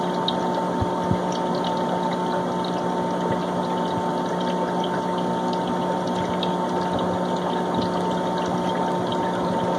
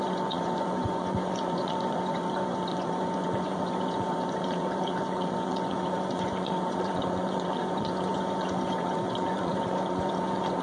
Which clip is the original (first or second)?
first